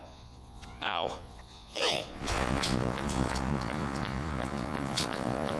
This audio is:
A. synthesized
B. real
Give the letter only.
A